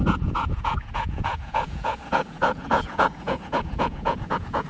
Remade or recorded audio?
remade